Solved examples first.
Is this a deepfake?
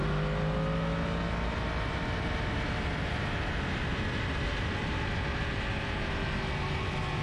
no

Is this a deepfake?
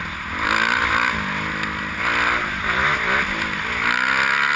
no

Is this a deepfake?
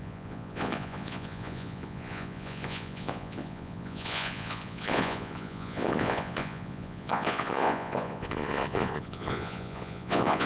yes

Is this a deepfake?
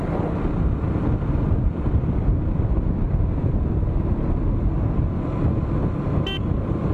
no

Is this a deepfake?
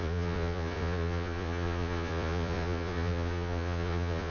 yes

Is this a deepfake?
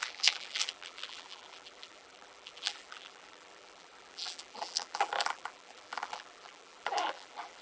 yes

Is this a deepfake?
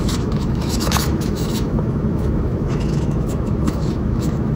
yes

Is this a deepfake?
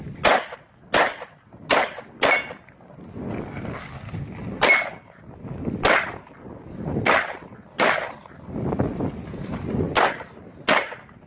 no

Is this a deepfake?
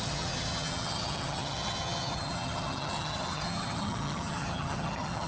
yes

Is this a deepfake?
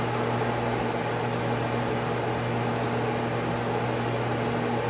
no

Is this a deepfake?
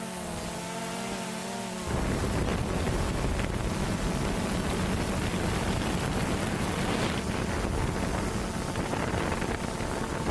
no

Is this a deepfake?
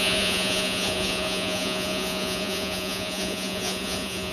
yes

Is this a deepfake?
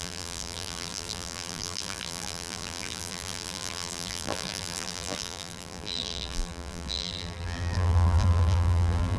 yes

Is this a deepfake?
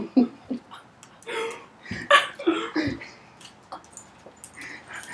no